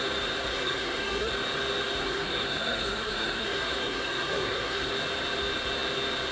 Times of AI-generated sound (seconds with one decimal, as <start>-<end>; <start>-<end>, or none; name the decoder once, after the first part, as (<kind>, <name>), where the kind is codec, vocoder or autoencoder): 0.5-1.3 (codec, SNAC); 2.0-4.9